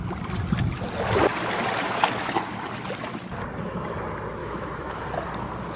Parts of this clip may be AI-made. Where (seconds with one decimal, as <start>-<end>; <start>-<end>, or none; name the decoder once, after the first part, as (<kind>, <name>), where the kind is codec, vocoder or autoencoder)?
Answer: 4.4-5.0 (autoencoder, DAC-VAE)